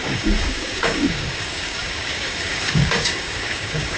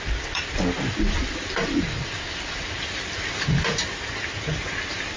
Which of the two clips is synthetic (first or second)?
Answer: first